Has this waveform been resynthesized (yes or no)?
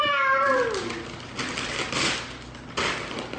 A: no